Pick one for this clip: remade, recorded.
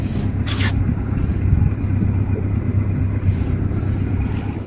remade